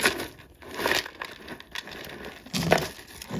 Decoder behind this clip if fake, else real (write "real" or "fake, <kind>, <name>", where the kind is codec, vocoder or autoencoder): fake, vocoder, BigVGAN v2